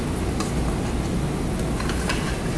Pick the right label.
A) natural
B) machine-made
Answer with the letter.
A